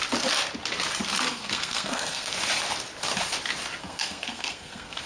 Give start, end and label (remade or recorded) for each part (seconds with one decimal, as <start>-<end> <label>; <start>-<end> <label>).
0.0-1.3 recorded; 1.3-2.4 remade; 2.4-3.8 recorded; 3.8-5.1 remade